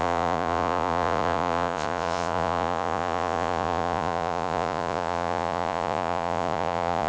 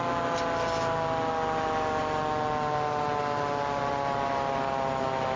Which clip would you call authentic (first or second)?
second